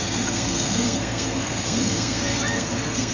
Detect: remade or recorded remade